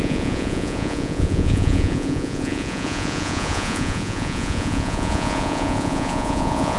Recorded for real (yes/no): no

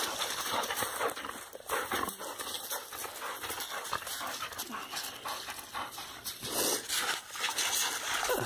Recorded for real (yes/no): yes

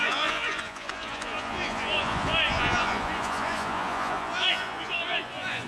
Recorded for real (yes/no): no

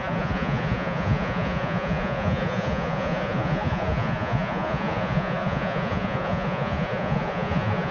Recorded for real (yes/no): no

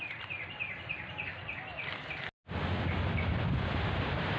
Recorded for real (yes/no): yes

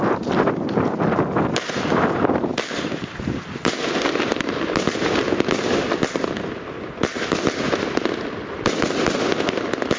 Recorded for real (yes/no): yes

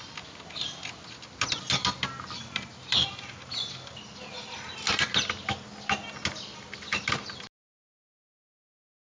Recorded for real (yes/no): yes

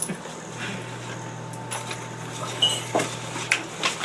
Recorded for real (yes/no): yes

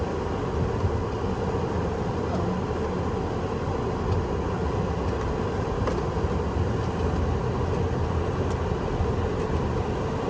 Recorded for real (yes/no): yes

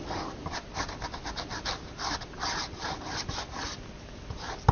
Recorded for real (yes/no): yes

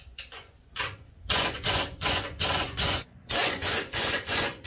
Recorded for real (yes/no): no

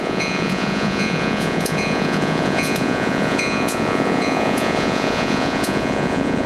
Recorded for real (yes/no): no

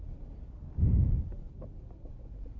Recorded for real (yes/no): yes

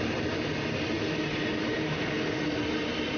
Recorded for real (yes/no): yes